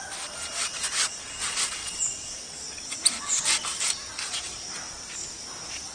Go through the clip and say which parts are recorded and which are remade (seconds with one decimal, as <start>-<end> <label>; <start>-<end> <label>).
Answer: 0.0-5.9 recorded

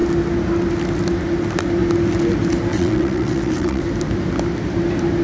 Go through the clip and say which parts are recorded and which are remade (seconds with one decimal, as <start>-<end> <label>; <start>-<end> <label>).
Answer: 0.0-2.7 recorded; 2.7-3.8 remade; 3.8-5.2 recorded

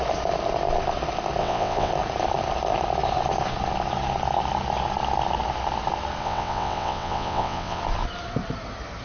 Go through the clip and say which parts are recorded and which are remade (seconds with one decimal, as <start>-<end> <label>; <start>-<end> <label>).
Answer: 0.0-1.4 recorded; 1.4-1.9 remade; 1.9-6.2 recorded; 6.2-7.8 remade; 7.8-9.0 recorded